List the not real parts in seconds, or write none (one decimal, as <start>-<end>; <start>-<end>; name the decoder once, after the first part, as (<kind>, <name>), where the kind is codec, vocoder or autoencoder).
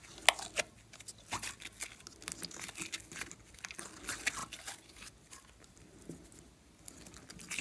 none